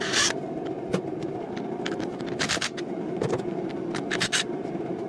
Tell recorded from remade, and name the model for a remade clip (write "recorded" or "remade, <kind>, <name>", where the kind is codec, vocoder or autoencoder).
remade, vocoder, BigVGAN v2